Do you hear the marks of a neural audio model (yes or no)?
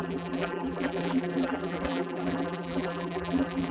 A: yes